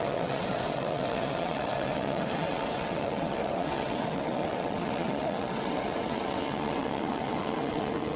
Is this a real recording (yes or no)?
no